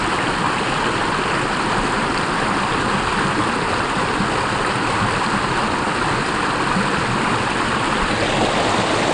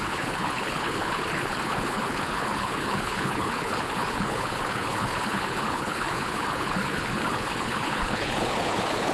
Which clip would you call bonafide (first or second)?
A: first